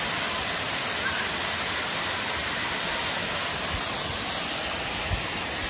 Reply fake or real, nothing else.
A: real